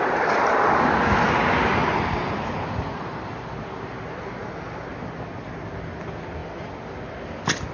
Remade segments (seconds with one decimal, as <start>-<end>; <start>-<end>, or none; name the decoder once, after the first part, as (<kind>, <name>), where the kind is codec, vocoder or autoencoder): none